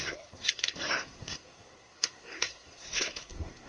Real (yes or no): no